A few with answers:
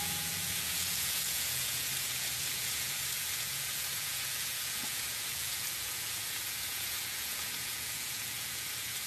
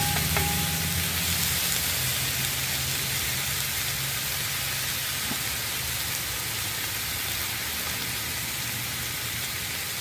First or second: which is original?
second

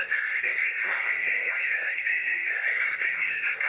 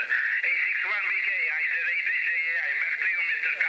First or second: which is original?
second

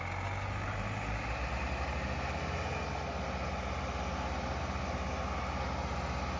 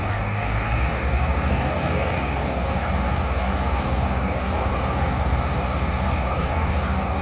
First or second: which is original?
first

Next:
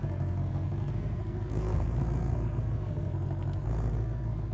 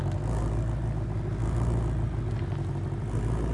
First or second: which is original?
second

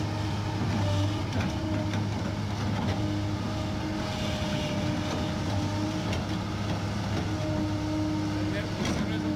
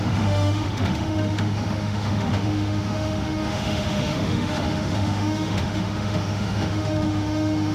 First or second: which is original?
first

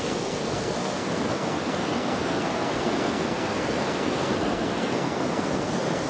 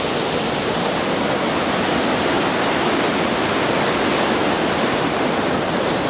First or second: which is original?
second